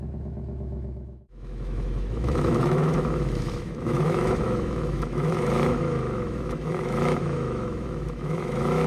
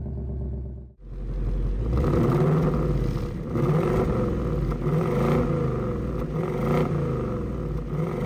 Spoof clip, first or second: first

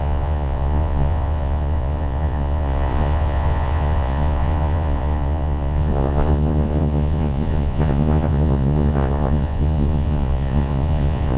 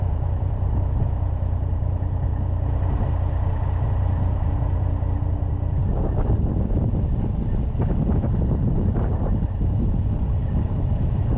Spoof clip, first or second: first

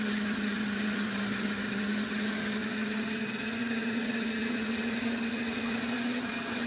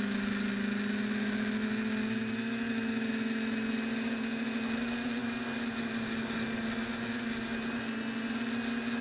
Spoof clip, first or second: first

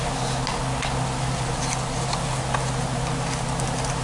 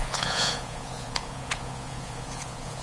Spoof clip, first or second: second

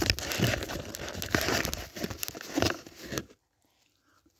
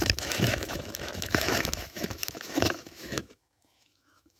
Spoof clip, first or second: second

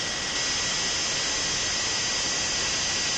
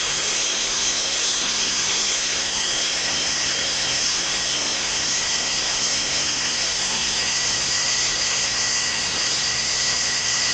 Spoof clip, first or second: second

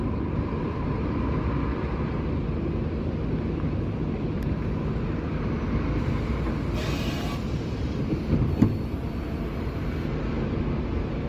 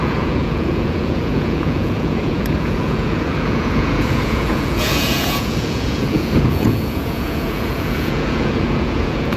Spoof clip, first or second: second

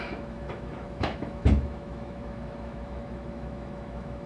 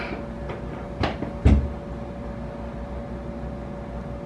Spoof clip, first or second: first